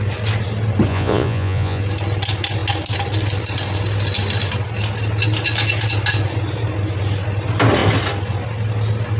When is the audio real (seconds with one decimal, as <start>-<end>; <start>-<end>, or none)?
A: 0.0-0.9; 1.8-9.2